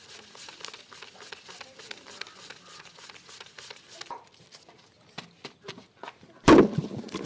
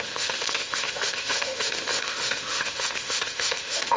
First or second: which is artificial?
second